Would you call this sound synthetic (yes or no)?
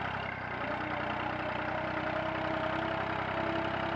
no